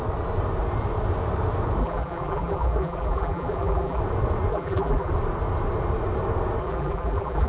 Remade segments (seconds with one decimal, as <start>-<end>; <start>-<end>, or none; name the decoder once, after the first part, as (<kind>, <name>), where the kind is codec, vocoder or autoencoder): 1.8-4.0 (vocoder, BigVGAN v2); 4.5-5.1; 6.6-7.5